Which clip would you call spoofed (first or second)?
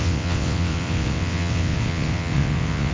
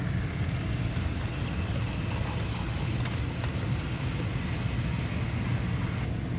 first